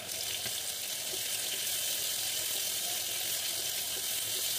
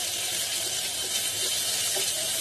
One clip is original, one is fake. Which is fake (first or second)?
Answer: second